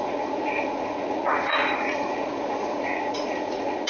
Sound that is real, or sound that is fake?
fake